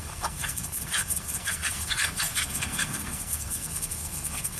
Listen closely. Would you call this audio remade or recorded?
remade